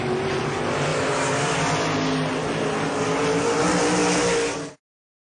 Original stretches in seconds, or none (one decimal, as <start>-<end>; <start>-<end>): 0.0-0.9; 1.6-5.3